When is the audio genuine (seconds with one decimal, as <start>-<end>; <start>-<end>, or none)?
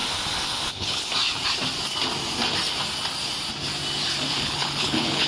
0.0-0.7; 1.1-4.3